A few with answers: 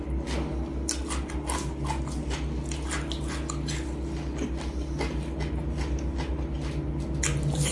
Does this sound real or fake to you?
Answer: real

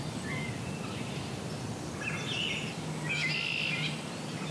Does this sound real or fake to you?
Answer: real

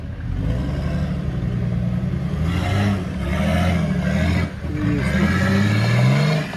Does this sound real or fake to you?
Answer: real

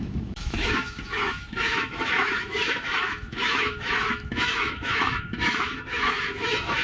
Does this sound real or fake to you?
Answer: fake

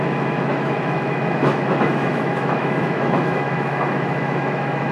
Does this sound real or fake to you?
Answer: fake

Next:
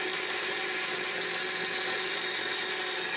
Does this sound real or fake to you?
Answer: real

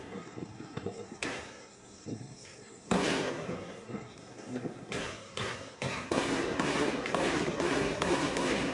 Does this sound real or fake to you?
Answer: fake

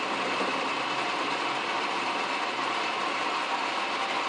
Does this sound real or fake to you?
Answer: real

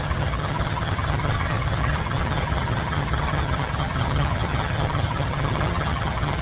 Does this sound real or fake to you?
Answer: fake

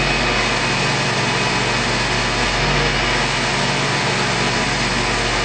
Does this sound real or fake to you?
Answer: real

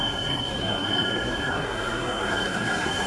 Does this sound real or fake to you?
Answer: fake